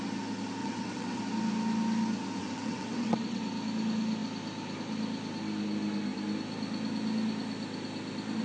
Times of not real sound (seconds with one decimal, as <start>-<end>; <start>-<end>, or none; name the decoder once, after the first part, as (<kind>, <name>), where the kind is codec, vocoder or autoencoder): 0.6-1.2 (vocoder, WaveNeXt); 2.4-3.4